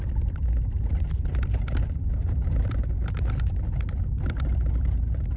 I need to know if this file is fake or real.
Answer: real